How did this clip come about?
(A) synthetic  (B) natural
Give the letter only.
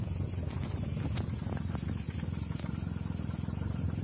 B